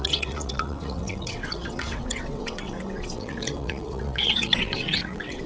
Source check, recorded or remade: remade